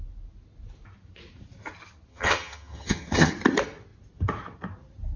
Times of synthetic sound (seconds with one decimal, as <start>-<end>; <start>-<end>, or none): 2.1-3.3